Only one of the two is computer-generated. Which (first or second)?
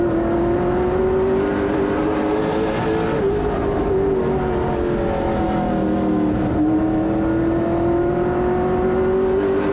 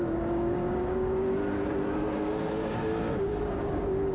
second